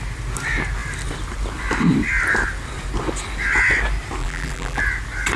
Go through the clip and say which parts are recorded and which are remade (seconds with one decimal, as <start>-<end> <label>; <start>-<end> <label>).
0.0-4.2 recorded; 4.2-4.8 remade; 4.8-5.4 recorded